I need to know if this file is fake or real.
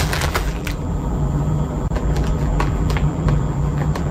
fake